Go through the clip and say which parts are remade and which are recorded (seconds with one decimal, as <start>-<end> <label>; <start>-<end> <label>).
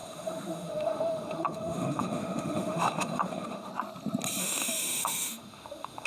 0.0-3.7 remade; 3.7-4.4 recorded; 4.4-6.1 remade